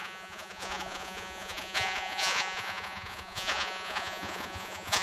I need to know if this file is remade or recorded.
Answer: remade